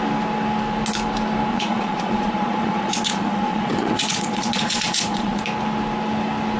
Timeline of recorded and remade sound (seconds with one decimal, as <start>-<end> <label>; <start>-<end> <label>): 0.0-1.5 recorded; 1.5-5.4 remade; 5.4-6.6 recorded